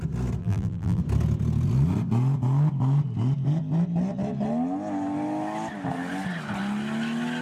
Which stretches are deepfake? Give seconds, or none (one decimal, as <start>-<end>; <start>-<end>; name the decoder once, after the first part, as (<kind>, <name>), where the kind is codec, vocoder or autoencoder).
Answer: 0.4-1.0 (vocoder, BigVGAN v2)